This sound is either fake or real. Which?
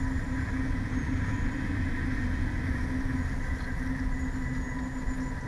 real